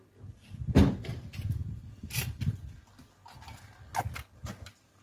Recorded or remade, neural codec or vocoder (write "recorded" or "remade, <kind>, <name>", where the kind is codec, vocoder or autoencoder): recorded